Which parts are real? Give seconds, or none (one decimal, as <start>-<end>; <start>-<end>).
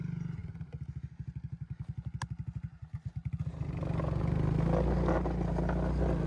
0.0-6.3